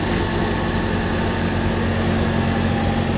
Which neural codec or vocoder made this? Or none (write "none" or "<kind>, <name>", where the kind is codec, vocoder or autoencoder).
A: none